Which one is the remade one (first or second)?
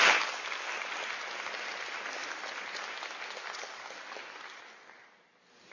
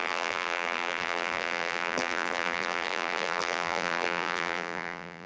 second